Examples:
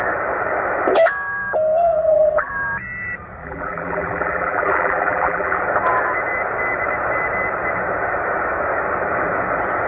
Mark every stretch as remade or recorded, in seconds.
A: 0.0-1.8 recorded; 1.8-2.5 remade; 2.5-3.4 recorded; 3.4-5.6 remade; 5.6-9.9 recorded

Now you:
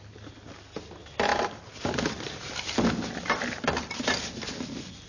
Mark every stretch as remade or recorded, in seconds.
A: 0.0-1.3 recorded; 1.3-2.7 remade; 2.7-5.1 recorded

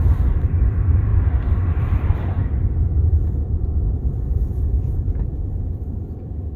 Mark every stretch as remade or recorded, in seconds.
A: 0.0-1.1 remade; 1.1-1.8 recorded; 1.8-6.6 remade

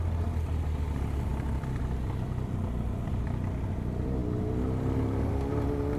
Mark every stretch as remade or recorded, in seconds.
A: 0.0-6.0 recorded

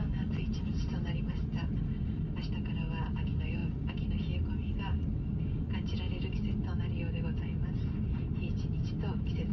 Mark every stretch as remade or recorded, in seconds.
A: 0.0-0.7 recorded; 0.7-1.8 remade; 1.8-9.5 recorded

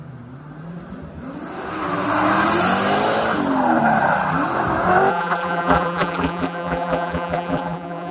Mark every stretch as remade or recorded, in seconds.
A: 0.0-5.1 recorded; 5.1-8.1 remade